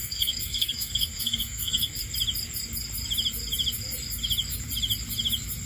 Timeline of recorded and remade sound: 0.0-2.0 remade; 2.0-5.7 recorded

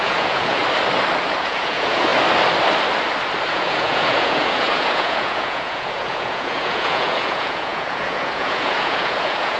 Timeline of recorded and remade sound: 0.0-0.6 remade; 0.6-1.4 recorded; 1.4-2.1 remade; 2.1-3.5 recorded; 3.5-9.6 remade

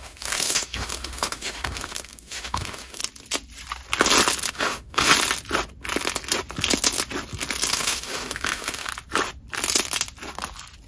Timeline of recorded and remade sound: 0.0-3.0 remade; 3.0-4.5 recorded; 4.5-5.1 remade; 5.1-7.7 recorded; 7.7-8.9 remade; 8.9-10.9 recorded

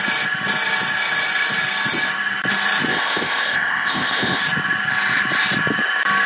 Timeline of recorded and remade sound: 0.0-2.9 recorded; 2.9-4.4 remade; 4.4-6.3 recorded